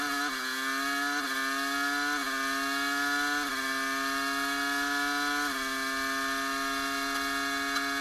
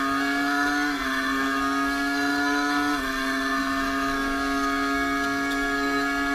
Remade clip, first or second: second